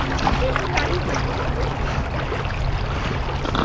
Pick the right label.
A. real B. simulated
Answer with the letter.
A